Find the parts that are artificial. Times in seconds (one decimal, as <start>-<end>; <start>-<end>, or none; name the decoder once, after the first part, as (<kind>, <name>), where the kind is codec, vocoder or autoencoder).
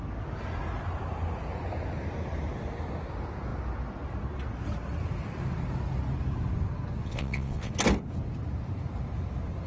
7.0-7.7 (vocoder, WaveNeXt)